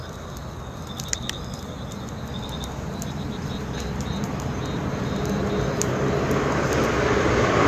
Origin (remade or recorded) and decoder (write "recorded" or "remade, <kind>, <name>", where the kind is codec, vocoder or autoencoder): recorded